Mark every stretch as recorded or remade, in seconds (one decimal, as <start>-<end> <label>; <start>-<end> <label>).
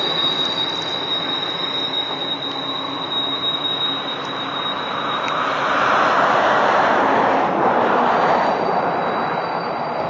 0.0-10.1 remade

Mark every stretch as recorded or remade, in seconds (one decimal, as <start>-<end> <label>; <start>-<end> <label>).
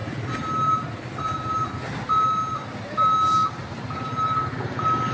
0.0-5.1 recorded